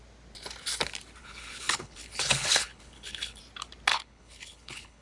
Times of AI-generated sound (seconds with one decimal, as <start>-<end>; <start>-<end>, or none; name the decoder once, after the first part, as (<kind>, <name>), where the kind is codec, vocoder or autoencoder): 1.2-3.4 (codec, HILCodec); 3.9-5.0